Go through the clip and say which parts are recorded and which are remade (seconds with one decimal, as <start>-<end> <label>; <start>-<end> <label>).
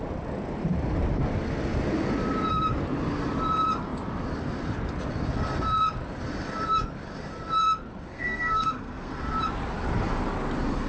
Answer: 0.0-8.1 recorded; 8.1-9.2 remade; 9.2-10.9 recorded